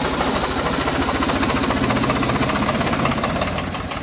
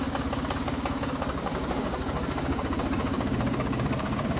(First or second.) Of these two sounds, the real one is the first